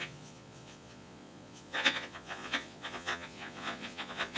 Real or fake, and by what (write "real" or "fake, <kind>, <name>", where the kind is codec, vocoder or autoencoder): fake, vocoder, Vocos